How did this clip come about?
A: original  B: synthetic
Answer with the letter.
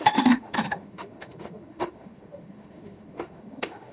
B